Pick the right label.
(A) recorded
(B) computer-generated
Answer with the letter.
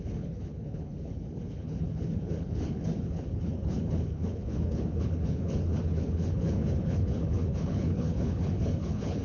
B